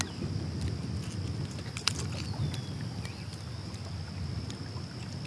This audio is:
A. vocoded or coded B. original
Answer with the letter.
B